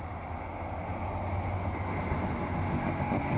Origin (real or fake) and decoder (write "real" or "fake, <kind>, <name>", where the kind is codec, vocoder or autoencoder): real